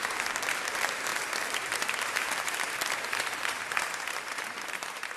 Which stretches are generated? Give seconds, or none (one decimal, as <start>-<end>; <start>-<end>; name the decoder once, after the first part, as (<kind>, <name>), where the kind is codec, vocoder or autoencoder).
0.0-1.1 (vocoder, BigVGAN v2); 1.8-5.2